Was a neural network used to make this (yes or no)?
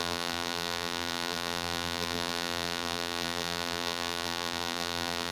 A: yes